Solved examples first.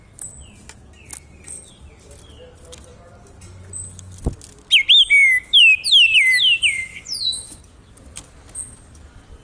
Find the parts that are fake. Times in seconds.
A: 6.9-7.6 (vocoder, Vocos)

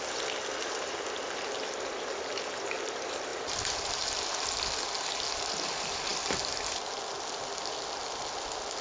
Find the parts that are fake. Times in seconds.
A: none